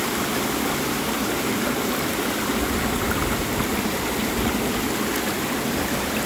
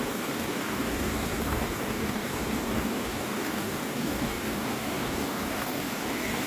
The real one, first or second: first